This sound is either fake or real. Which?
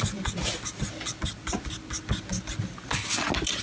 real